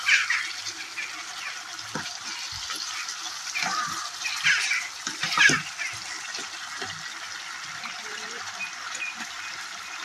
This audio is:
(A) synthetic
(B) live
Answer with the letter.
B